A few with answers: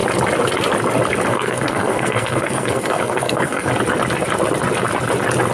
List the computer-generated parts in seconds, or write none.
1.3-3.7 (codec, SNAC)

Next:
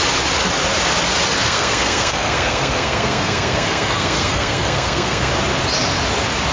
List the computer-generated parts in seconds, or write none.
1.4-5.3 (codec, SNAC)